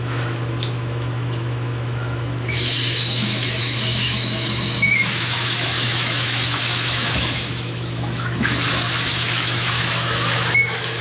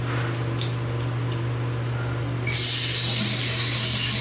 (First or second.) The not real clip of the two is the first